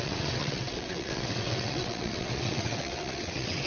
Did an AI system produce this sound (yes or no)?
yes